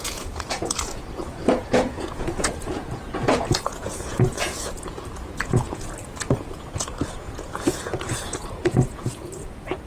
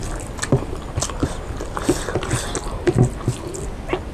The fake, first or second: first